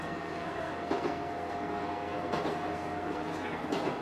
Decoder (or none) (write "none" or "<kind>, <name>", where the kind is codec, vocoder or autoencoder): codec, SNAC